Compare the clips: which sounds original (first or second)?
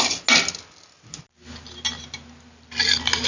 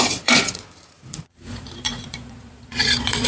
first